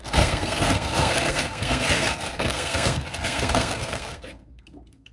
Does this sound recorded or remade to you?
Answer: remade